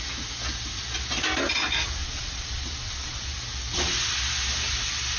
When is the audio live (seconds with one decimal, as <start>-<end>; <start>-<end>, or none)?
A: 0.0-2.0; 3.3-5.2